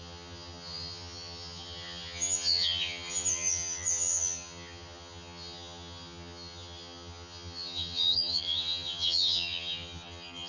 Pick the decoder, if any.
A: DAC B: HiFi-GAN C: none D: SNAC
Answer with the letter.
B